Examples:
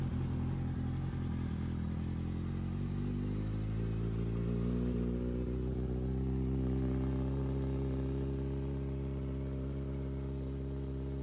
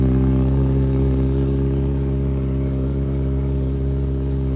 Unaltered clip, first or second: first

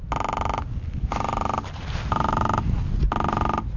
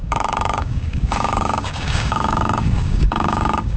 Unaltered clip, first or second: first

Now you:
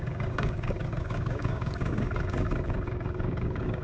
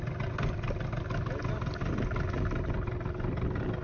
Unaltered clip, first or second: second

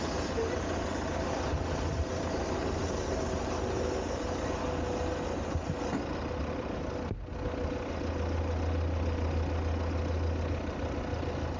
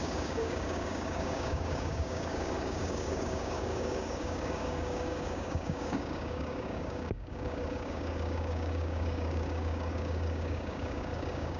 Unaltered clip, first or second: first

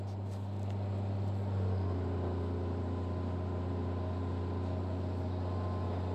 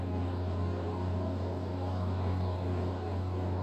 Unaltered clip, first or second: first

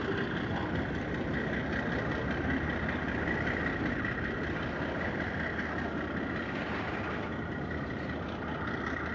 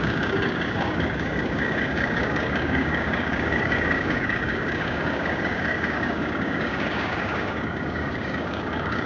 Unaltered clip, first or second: first